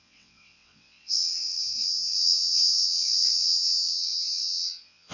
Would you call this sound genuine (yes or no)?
no